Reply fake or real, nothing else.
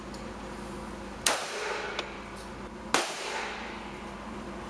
real